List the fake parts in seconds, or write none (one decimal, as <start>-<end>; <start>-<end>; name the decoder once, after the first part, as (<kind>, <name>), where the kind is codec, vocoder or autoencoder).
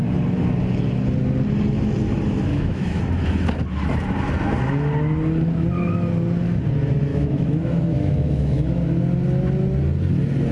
2.5-3.0 (autoencoder, DAC-VAE); 7.1-9.0